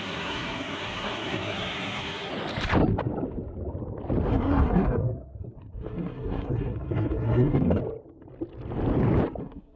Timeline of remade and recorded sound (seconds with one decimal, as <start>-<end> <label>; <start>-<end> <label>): 0.0-2.3 remade; 2.3-4.3 recorded; 4.3-7.8 remade; 7.8-9.4 recorded; 9.4-9.8 remade